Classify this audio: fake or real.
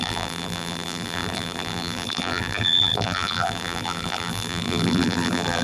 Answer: fake